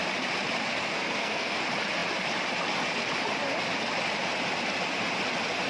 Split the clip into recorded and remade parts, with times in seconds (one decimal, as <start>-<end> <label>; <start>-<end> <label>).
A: 0.0-0.8 recorded; 0.8-1.6 remade; 1.6-5.7 recorded